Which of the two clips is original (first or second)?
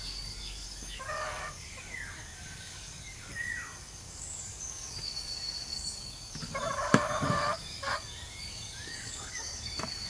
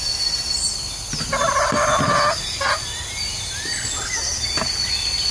second